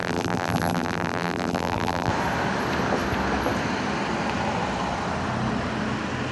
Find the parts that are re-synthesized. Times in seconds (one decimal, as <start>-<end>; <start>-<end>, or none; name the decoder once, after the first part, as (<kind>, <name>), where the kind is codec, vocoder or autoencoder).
0.0-2.1 (vocoder, BigVGAN v2)

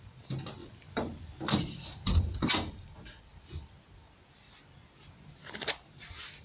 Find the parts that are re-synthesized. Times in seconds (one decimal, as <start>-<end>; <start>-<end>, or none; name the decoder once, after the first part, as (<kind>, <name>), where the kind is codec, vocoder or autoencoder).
0.6-2.5 (vocoder, BigVGAN v2)

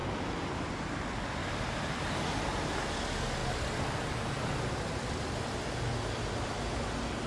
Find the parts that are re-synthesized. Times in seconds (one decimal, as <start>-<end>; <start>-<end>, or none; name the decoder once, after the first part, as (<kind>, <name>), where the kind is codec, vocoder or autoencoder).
0.0-0.5 (vocoder, BigVGAN v2); 1.4-2.7

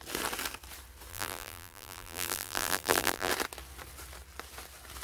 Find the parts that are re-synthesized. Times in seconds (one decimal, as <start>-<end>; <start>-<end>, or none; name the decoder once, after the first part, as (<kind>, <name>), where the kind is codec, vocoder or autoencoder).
1.1-3.3 (vocoder, BigVGAN v2)

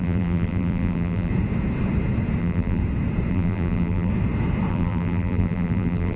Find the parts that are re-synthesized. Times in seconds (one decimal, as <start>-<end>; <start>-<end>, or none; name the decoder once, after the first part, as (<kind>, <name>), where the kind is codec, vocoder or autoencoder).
0.0-1.3 (vocoder, BigVGAN v2); 2.4-2.8; 3.3-4.1; 4.7-6.2